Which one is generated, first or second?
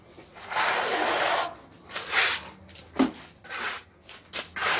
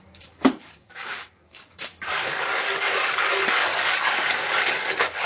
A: second